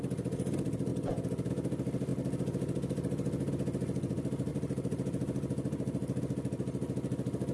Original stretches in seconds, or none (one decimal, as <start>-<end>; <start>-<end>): 0.0-4.5; 6.2-7.5